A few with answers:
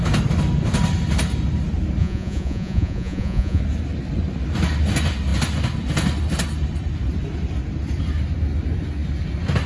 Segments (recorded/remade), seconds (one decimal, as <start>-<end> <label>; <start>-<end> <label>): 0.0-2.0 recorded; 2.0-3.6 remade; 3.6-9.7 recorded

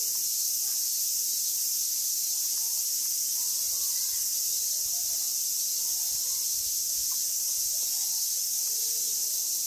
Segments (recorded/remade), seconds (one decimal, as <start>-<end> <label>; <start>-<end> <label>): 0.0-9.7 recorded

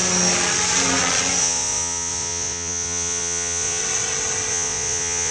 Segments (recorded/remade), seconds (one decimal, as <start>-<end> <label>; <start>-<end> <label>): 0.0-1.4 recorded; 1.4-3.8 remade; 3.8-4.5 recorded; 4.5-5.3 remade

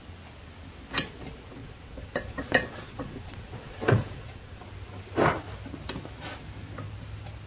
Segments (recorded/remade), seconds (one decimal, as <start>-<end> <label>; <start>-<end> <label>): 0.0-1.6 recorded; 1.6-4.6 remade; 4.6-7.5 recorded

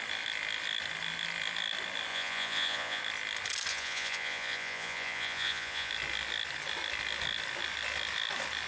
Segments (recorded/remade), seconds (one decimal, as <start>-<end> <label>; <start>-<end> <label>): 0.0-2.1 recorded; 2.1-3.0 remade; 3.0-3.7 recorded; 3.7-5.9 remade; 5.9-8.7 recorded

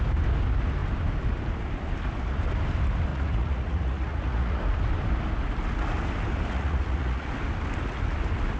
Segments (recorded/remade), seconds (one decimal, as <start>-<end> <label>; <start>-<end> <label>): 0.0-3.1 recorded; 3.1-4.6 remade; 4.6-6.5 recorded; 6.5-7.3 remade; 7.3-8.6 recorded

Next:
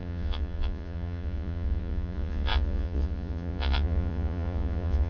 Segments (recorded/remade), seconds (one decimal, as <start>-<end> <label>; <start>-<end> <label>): 0.0-5.1 remade

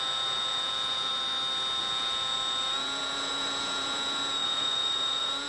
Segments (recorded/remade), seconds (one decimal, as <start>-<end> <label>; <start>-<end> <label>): 0.0-1.1 remade; 1.1-1.8 recorded; 1.8-5.5 remade